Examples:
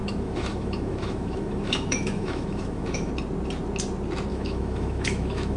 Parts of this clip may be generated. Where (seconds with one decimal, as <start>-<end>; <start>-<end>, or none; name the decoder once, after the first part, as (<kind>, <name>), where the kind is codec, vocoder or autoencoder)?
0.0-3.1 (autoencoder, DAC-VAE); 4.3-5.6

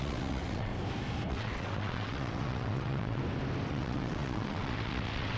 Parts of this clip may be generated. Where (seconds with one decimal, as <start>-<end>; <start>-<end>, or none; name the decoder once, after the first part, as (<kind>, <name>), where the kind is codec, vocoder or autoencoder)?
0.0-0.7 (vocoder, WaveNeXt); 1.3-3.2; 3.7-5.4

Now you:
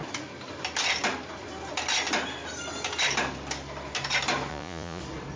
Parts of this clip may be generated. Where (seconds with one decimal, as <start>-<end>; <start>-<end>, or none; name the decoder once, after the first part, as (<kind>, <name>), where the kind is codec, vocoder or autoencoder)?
4.5-5.0 (vocoder, Vocos)